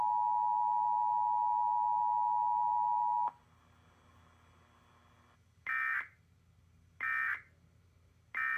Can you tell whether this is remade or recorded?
recorded